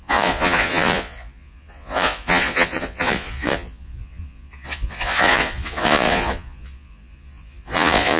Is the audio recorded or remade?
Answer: remade